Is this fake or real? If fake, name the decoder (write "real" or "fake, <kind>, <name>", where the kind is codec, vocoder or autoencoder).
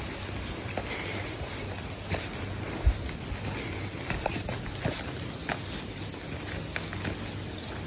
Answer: real